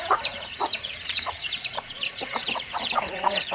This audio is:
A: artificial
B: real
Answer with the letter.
A